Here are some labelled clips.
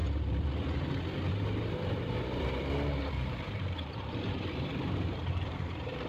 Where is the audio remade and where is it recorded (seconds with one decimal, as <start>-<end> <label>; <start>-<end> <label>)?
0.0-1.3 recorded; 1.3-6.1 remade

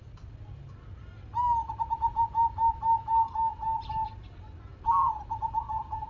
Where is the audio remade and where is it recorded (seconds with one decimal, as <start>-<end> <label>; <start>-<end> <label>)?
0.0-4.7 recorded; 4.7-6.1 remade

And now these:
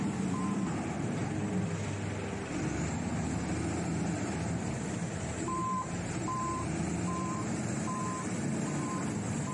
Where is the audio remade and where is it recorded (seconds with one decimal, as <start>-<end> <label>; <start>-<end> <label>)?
0.0-1.2 remade; 1.2-3.5 recorded; 3.5-8.0 remade; 8.0-8.6 recorded; 8.6-9.5 remade